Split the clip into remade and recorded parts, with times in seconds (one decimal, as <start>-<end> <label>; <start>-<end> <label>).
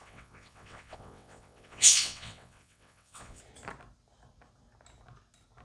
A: 0.0-3.4 remade; 3.4-5.6 recorded